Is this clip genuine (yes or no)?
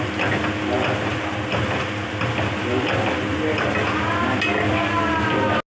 yes